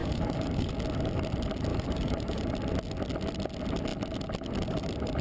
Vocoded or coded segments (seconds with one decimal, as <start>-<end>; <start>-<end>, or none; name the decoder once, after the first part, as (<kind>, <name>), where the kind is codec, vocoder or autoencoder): 0.0-0.7 (vocoder, BigVGAN v2); 1.7-2.5